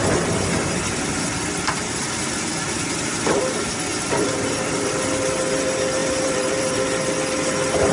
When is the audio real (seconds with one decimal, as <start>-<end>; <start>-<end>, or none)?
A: 0.0-3.9; 4.9-6.0; 7.1-7.9